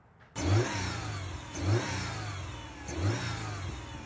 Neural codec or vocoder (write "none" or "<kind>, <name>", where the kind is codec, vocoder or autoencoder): none